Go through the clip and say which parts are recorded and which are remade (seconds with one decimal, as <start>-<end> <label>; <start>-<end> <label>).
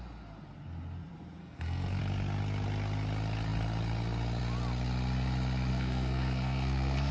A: 0.0-1.4 recorded; 1.4-2.0 remade; 2.0-5.7 recorded; 5.7-7.1 remade